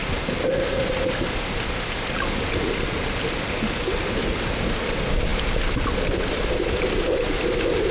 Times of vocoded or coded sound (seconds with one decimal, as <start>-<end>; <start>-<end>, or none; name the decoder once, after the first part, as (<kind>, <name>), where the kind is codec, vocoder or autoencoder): none